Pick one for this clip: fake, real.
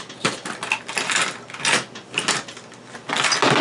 real